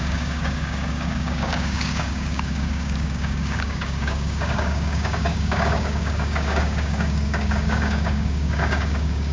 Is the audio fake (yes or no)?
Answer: yes